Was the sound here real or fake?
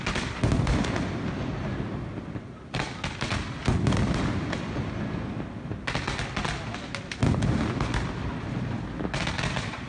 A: real